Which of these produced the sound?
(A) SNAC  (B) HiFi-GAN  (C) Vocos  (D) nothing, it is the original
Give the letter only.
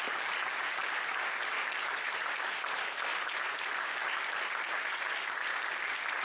D